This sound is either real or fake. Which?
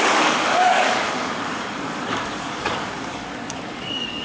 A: fake